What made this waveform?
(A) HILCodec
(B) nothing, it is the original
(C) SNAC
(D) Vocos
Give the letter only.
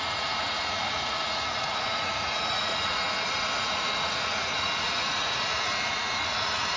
D